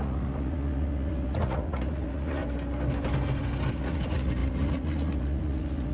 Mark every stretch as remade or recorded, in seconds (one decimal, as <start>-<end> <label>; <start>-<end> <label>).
0.0-2.4 remade; 2.4-3.7 recorded; 3.7-5.9 remade